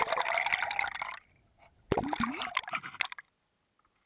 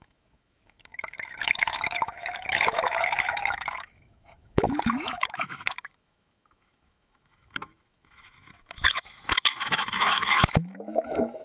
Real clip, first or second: first